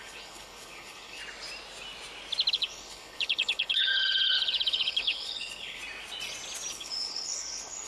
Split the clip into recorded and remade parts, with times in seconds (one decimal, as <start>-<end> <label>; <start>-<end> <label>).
0.0-1.2 remade; 1.2-2.5 recorded; 2.5-5.8 remade; 5.8-6.7 recorded; 6.7-7.9 remade